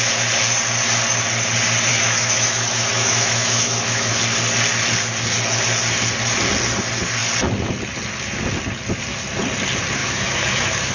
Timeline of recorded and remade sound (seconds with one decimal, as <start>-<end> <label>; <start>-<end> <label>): 0.0-1.9 recorded; 1.9-4.1 remade; 4.1-10.0 recorded; 10.0-10.9 remade